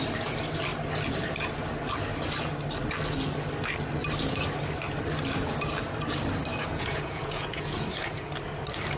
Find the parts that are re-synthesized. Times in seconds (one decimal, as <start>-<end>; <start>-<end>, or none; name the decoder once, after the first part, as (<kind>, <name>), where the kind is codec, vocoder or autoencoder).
6.5-8.3 (vocoder, Vocos)